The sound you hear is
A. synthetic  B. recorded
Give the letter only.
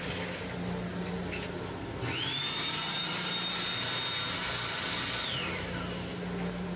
B